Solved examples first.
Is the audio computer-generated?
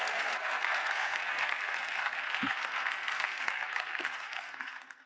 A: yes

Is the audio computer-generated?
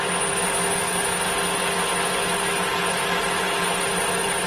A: no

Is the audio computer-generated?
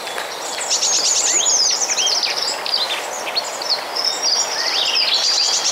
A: no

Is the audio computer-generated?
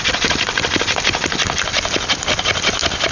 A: no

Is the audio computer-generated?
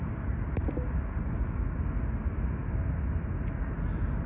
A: no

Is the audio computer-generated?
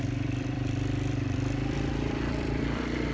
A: yes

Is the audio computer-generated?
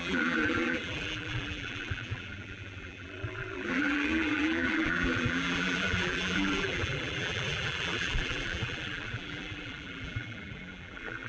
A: yes